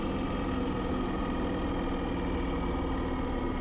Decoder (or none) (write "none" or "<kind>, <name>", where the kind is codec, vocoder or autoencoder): none